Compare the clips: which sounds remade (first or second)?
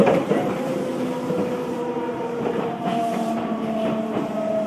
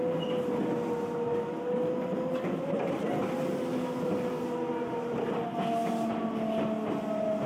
first